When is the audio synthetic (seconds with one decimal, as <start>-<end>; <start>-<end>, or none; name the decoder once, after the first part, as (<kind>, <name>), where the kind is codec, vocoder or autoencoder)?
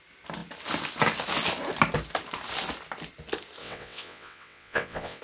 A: 3.6-5.2 (vocoder, WaveNeXt)